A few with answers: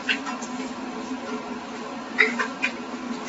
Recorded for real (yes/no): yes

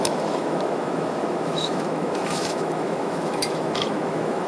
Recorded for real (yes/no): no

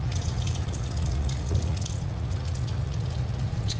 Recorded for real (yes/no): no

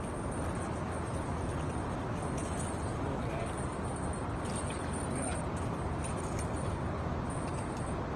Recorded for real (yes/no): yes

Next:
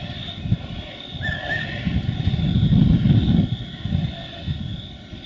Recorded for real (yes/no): yes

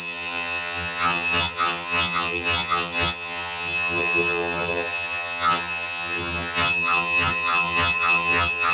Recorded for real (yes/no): no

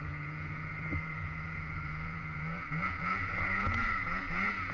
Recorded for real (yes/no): no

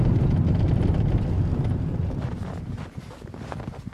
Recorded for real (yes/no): yes